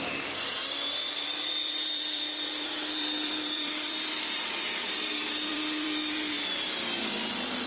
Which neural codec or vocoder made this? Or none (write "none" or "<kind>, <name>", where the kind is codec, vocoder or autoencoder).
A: vocoder, BigVGAN v2